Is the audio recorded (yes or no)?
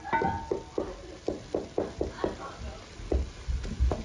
yes